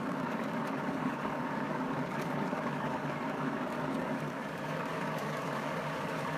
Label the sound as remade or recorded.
remade